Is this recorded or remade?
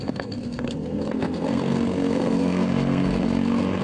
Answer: remade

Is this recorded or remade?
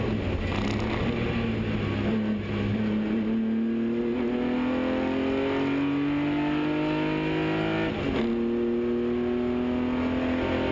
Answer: recorded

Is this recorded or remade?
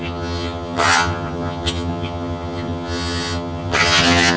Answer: remade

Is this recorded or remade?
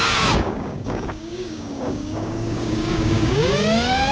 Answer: remade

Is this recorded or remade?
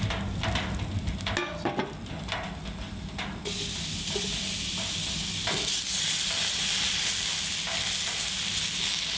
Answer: recorded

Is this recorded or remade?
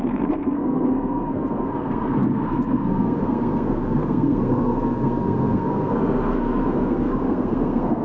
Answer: remade